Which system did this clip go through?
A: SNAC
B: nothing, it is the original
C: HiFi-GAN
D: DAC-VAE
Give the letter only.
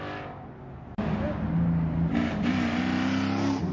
B